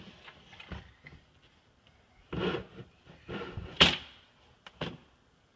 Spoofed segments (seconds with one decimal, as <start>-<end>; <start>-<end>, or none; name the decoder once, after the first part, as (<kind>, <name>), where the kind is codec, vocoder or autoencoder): 2.2-4.3 (vocoder, BigVGAN v2)